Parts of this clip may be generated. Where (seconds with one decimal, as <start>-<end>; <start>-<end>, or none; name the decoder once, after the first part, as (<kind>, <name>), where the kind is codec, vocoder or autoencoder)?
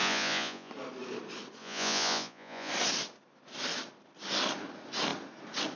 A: 0.0-0.7 (vocoder, Vocos); 1.6-2.7